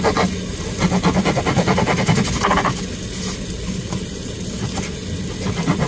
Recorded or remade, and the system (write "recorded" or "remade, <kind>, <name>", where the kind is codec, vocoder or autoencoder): recorded